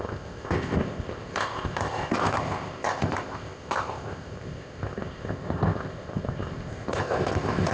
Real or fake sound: fake